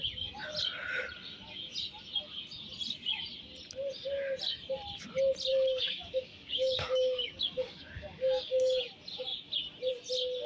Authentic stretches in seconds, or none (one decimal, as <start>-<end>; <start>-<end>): 0.0-5.5; 8.8-10.5